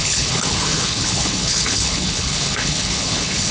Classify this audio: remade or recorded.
remade